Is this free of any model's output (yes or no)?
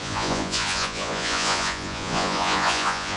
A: no